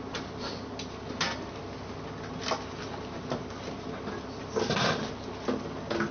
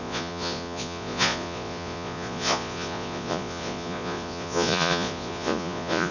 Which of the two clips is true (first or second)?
first